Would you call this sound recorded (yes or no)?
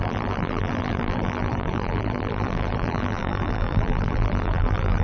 no